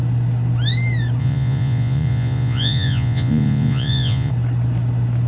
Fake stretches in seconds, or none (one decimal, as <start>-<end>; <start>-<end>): 1.2-4.3